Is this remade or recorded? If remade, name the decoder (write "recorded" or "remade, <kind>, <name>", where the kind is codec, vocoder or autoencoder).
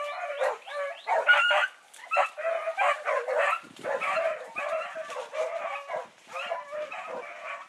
recorded